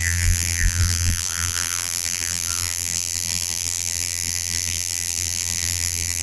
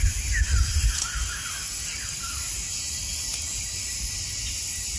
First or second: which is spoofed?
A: first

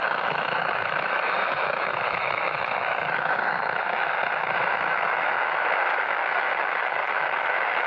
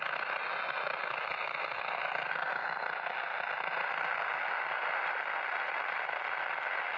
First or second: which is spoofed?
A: first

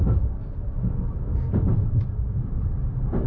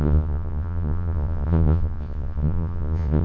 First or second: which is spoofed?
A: second